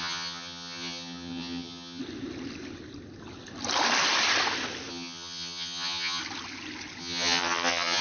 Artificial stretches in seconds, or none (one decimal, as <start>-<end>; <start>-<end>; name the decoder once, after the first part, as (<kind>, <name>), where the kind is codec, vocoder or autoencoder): 0.0-2.0 (vocoder, HiFi-GAN); 4.9-6.2; 7.0-8.0